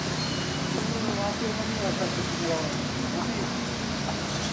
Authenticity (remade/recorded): recorded